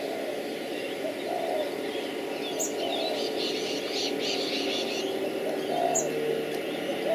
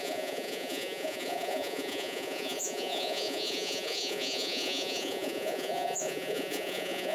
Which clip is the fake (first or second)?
second